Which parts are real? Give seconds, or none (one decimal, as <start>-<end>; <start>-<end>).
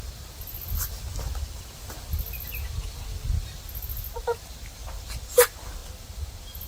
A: 0.0-6.7